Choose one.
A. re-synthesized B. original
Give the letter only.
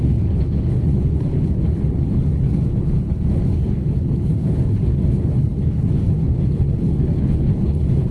A